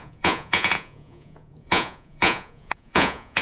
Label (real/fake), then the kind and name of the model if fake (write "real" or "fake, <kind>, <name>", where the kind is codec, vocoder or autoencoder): fake, vocoder, Vocos